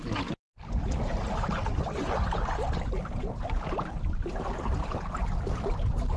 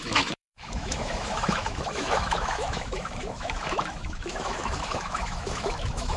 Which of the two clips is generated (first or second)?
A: second